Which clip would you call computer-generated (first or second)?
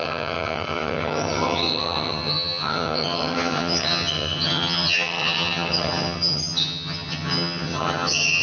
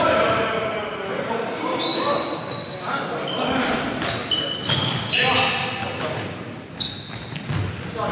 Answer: first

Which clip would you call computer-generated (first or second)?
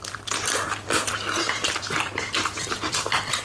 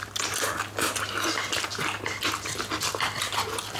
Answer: first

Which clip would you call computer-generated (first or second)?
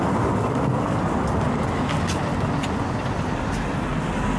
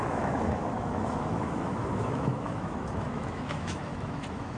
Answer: second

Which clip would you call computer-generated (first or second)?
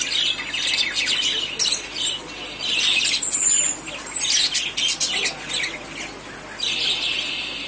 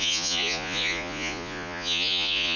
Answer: second